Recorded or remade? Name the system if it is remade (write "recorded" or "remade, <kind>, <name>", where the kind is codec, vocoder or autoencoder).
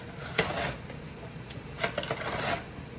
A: recorded